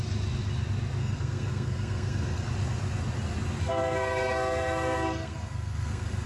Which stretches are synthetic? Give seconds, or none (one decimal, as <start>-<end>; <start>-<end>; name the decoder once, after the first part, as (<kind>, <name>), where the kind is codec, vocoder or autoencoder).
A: 1.0-2.4 (codec, SNAC); 3.6-6.3